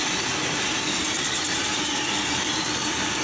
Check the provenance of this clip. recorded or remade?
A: remade